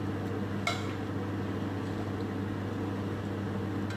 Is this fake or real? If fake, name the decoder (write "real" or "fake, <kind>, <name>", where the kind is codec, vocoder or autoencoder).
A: real